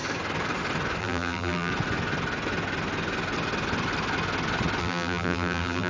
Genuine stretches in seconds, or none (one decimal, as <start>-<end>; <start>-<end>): 0.0-1.0; 1.7-4.8